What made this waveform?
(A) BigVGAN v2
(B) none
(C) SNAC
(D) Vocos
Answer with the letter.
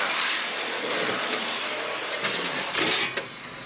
B